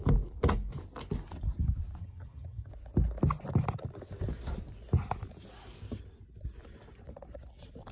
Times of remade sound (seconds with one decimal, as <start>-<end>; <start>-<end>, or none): 2.0-2.7